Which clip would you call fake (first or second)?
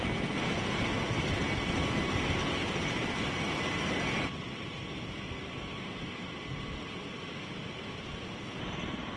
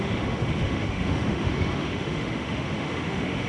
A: second